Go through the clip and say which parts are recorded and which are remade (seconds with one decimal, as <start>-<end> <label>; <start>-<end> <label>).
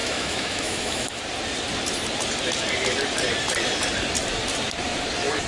0.0-1.2 remade; 1.2-5.5 recorded